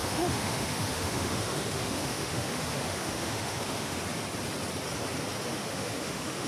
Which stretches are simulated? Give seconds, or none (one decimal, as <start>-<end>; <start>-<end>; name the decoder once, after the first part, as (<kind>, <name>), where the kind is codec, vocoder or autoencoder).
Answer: 0.0-4.0 (autoencoder, DAC-VAE); 5.5-6.5